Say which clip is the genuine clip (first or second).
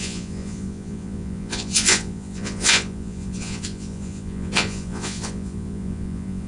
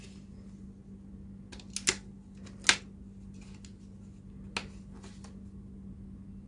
second